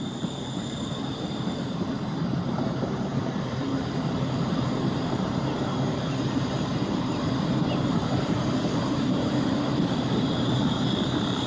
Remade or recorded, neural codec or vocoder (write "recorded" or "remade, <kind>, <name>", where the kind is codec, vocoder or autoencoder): remade, vocoder, BigVGAN v2